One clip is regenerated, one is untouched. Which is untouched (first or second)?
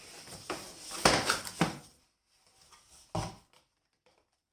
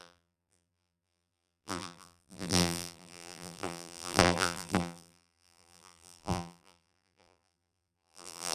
first